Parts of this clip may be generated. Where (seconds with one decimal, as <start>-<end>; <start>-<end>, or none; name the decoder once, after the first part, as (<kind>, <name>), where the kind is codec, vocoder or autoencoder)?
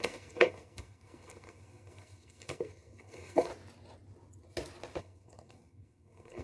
0.0-3.5 (codec, SNAC); 5.0-6.4